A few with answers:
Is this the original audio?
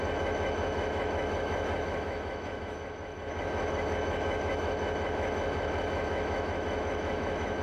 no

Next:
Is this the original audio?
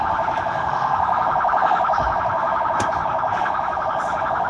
no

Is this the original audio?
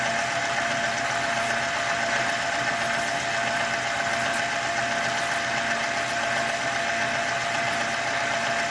yes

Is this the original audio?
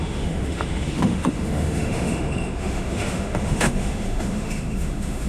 no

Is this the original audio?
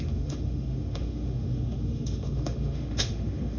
no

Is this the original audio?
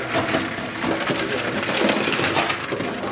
yes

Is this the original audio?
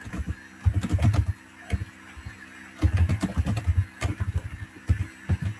yes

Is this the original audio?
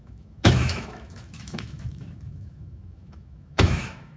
no